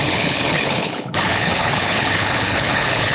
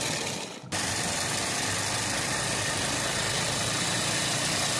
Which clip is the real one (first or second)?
second